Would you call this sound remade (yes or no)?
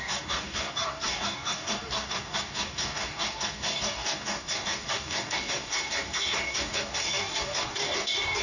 yes